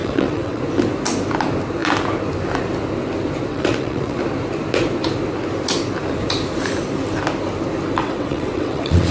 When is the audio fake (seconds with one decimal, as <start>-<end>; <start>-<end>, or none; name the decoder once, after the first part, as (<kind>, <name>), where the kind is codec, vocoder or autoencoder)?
0.0-0.6 (vocoder, WaveNeXt); 3.5-4.2; 8.0-9.1